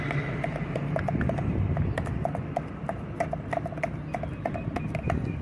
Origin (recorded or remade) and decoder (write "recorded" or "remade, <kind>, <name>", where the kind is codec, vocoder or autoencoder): recorded